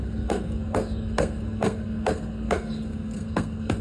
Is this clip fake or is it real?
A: fake